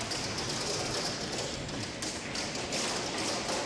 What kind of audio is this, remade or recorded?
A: recorded